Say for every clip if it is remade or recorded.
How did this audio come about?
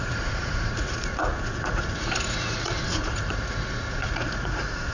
remade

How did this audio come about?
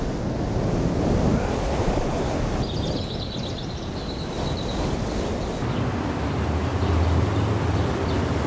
recorded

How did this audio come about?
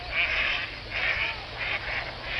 recorded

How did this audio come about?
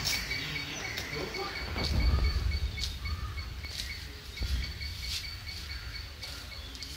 recorded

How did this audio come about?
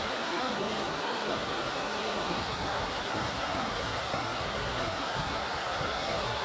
remade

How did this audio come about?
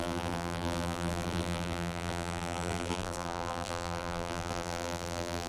remade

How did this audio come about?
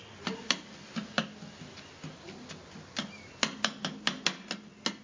recorded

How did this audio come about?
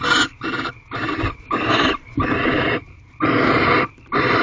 remade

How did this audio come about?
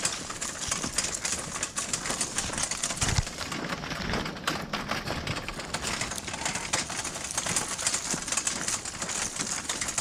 recorded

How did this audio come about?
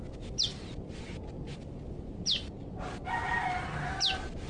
recorded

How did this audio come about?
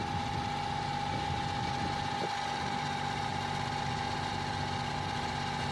recorded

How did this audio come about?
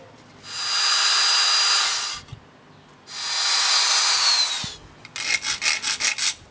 recorded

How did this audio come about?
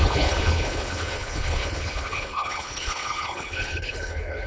remade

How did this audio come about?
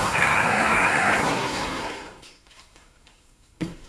remade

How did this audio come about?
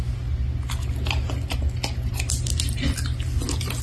recorded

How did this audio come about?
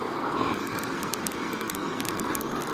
remade